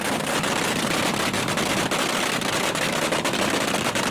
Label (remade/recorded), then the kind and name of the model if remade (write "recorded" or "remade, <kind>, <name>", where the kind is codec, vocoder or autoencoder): recorded